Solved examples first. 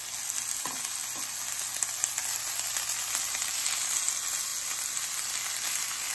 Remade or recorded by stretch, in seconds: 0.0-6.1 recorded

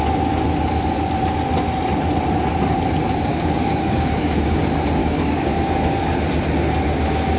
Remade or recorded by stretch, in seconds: 0.0-3.3 recorded; 3.3-4.6 remade; 4.6-5.0 recorded; 5.0-6.0 remade; 6.0-7.4 recorded

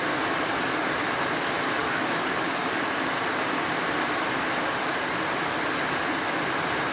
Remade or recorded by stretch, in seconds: 0.0-1.8 recorded; 1.8-2.7 remade; 2.7-6.9 recorded

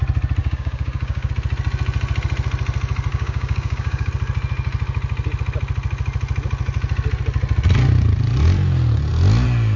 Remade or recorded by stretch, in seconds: 0.0-0.4 recorded; 0.4-1.3 remade; 1.3-3.1 recorded; 3.1-4.1 remade; 4.1-9.8 recorded

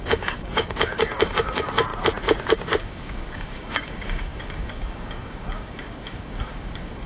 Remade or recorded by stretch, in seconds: 0.0-1.9 remade; 1.9-2.8 recorded; 2.8-7.1 remade

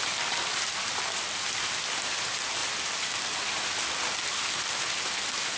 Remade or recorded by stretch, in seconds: 0.0-5.6 recorded

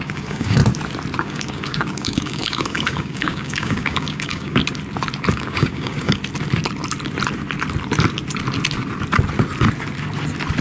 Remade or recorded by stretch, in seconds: 0.0-0.6 remade; 0.6-1.2 recorded; 1.2-4.6 remade; 4.6-5.3 recorded; 5.3-6.2 remade; 6.2-10.6 recorded